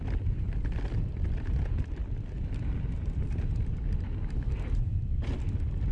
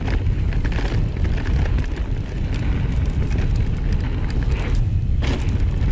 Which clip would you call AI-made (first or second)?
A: first